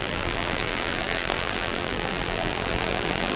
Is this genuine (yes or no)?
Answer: no